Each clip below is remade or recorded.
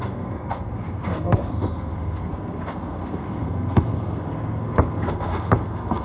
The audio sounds remade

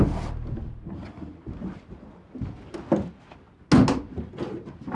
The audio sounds recorded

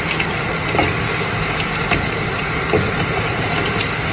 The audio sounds recorded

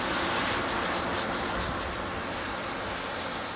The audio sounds recorded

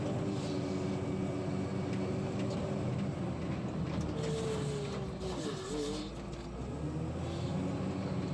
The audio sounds recorded